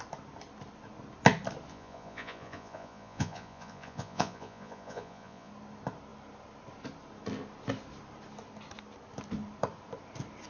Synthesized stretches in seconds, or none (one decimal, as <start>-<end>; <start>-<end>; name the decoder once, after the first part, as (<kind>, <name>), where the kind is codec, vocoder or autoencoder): 1.7-5.5 (vocoder, Vocos)